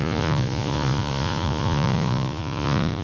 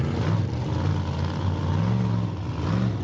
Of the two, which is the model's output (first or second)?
first